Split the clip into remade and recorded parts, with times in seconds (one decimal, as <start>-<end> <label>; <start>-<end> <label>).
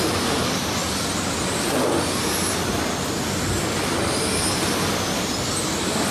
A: 0.0-6.1 recorded